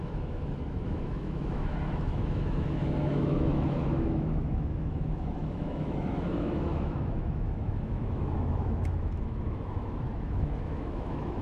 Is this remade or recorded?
remade